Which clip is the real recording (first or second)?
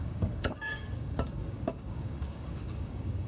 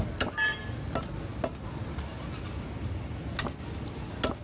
second